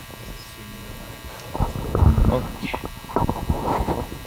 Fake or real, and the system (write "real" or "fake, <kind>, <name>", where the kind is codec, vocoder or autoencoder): real